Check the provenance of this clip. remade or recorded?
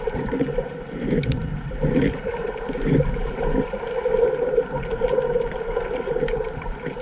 recorded